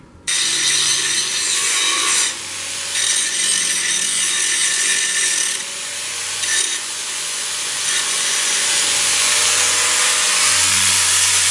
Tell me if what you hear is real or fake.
fake